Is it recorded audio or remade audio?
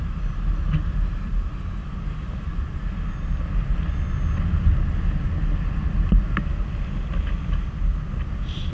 recorded